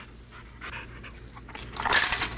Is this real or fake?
real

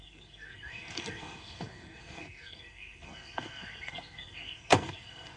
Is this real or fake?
fake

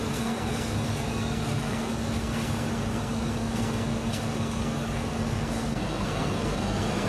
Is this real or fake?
fake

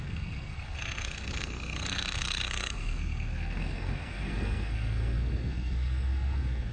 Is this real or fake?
fake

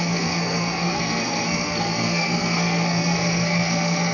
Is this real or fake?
fake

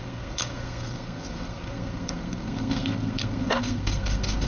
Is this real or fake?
fake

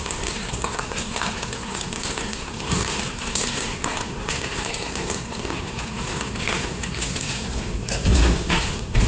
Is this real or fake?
fake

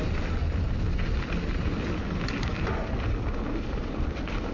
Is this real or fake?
real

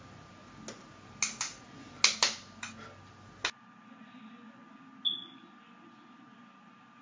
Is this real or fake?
real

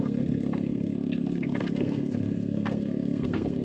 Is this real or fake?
fake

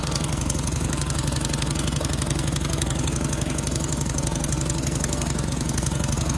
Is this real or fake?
fake